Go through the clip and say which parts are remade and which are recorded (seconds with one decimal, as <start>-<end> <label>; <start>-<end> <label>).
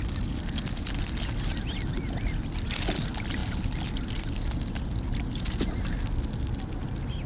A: 0.0-7.3 recorded